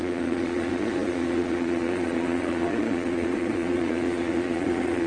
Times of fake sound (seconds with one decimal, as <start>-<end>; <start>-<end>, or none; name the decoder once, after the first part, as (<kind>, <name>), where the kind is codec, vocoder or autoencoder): 0.0-5.1 (vocoder, Vocos)